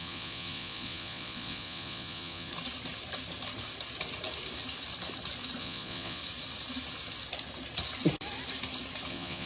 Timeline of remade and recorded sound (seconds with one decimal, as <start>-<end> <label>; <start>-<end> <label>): 0.0-2.5 remade; 2.5-5.6 recorded; 5.6-6.2 remade; 6.2-9.1 recorded; 9.1-9.5 remade